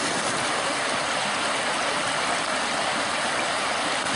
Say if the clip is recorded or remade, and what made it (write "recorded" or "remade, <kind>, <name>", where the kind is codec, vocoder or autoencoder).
recorded